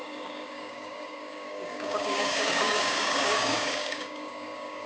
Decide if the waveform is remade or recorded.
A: remade